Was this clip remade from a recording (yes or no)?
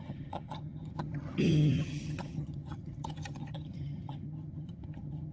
yes